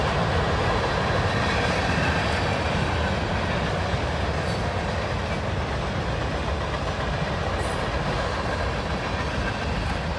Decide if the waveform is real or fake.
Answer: real